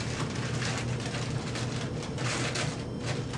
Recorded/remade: recorded